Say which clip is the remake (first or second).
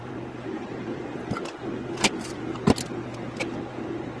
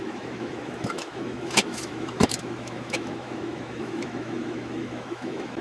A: second